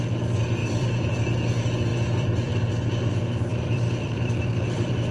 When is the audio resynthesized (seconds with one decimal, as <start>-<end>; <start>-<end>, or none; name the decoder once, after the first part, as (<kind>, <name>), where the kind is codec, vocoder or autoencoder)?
0.6-1.1 (vocoder, BigVGAN v2); 1.9-2.5; 3.5-5.1